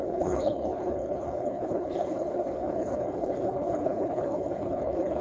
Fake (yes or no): yes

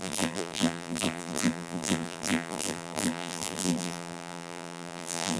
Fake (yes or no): yes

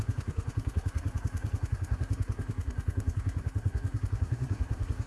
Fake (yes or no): yes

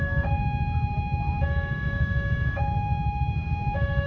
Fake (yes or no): yes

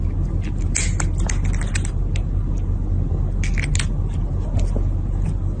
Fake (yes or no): no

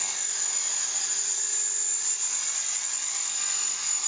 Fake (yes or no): no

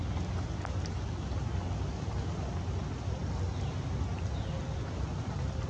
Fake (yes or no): no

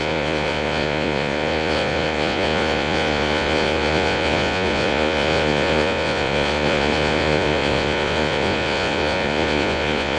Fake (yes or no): yes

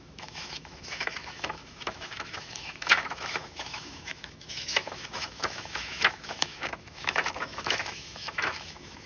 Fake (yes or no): yes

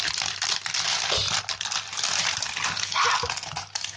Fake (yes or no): no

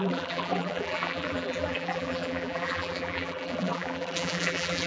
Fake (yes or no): yes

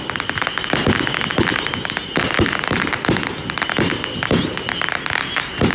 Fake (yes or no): no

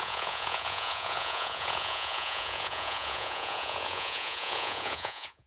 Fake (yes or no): yes